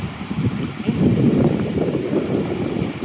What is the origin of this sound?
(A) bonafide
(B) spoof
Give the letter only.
A